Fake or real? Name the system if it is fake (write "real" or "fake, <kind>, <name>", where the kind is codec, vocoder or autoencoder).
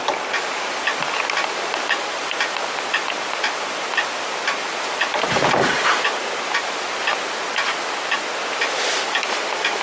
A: fake, vocoder, BigVGAN v2